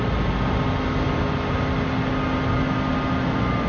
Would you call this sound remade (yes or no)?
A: no